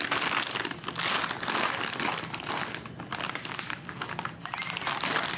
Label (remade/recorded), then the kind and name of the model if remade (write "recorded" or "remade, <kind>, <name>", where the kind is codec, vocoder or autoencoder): recorded